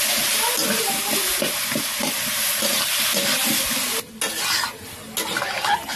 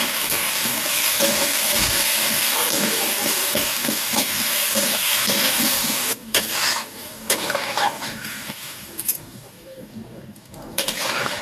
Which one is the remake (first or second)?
second